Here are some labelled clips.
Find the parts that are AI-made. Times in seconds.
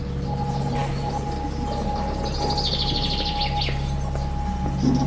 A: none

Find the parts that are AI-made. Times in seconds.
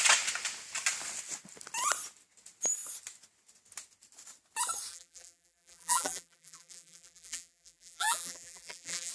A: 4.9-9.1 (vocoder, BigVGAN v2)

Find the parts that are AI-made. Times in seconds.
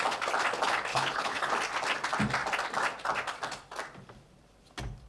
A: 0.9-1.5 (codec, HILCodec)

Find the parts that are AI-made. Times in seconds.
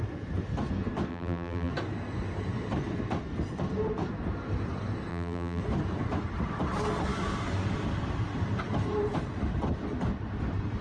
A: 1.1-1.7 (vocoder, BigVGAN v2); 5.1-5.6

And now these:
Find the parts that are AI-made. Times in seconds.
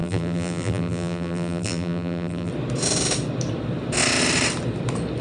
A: 0.0-2.5 (vocoder, BigVGAN v2)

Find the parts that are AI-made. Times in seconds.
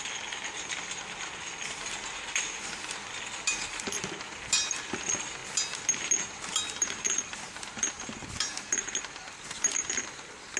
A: none